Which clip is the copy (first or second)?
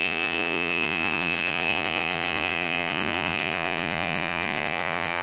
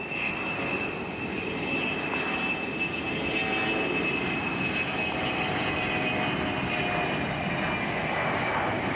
first